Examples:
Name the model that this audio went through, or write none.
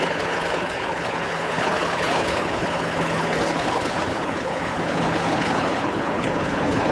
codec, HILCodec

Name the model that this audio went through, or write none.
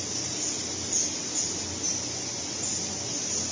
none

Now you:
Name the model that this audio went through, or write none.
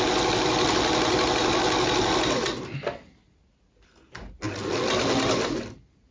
none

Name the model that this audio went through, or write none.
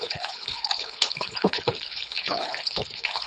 codec, HILCodec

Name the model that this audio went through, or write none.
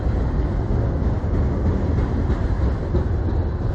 none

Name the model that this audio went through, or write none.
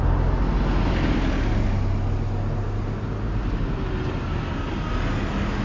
none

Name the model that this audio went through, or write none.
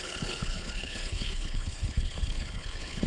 codec, HILCodec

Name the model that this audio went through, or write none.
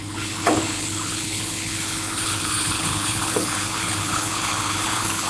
codec, HILCodec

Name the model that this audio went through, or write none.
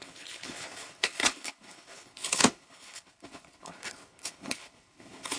codec, HILCodec